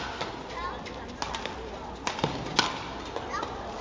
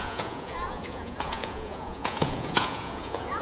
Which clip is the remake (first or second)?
second